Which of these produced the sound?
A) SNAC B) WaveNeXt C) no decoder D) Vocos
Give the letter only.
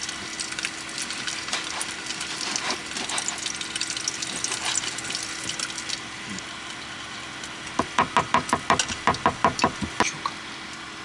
C